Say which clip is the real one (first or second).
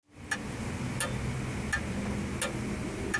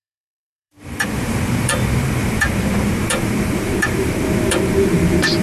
first